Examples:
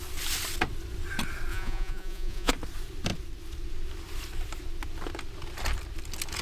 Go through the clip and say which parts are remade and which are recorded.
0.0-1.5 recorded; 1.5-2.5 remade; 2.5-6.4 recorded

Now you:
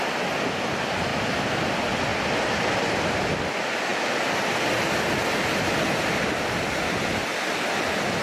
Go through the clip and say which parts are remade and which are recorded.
0.0-1.1 recorded; 1.1-1.7 remade; 1.7-2.1 recorded; 2.1-3.5 remade; 3.5-3.9 recorded; 3.9-5.9 remade; 5.9-7.2 recorded; 7.2-8.2 remade